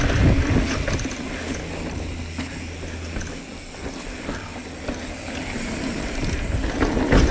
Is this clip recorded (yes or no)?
yes